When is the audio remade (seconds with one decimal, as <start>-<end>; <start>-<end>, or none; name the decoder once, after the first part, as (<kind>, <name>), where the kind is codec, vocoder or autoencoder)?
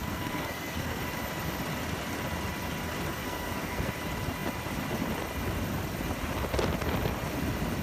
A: 0.0-1.0 (codec, SNAC); 3.1-3.9